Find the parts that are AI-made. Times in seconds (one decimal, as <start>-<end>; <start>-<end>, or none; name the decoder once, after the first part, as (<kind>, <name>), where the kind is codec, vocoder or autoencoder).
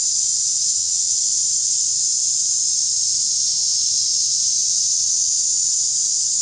0.7-1.2 (vocoder, HiFi-GAN)